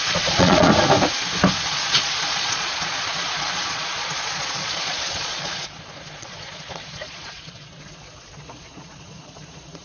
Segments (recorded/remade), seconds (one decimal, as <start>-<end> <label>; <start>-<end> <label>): 0.0-0.7 remade; 0.7-1.6 recorded; 1.6-9.8 remade